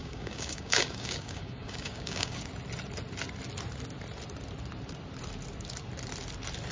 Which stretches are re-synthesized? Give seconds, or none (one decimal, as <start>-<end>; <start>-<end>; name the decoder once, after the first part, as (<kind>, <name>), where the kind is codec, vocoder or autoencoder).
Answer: 0.0-2.5 (codec, DAC)